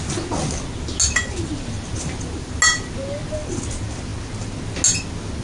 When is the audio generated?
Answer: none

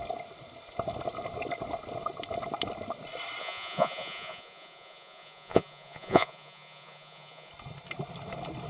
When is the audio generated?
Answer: 3.4-7.5 (vocoder, Vocos)